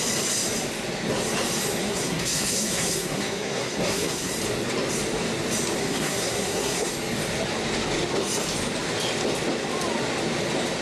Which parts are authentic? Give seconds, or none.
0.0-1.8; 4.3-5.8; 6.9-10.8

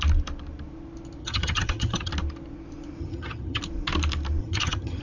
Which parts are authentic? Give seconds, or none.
0.0-1.2; 2.1-3.0; 3.6-4.4